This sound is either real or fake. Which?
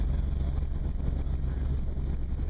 real